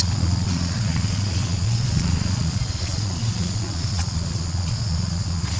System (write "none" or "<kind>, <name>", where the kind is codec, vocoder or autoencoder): vocoder, Vocos